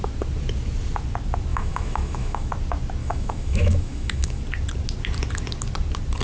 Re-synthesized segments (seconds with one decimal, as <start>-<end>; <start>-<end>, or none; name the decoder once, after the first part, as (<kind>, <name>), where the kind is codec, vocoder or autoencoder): 1.5-2.5 (autoencoder, DAC-VAE); 3.0-4.4